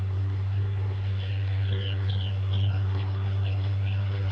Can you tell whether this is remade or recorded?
remade